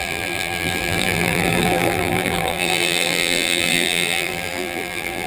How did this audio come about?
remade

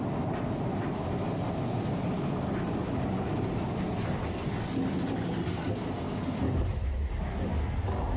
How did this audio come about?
recorded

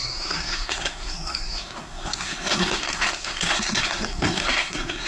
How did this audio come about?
remade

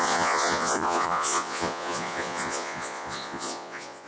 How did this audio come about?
remade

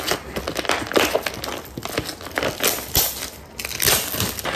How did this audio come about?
recorded